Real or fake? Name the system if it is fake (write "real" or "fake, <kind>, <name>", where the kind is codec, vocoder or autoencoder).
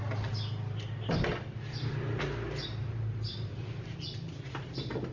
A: real